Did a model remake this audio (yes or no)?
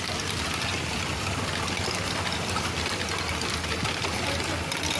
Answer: no